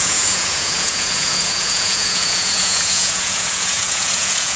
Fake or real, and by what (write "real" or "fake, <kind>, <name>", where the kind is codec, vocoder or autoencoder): fake, vocoder, Vocos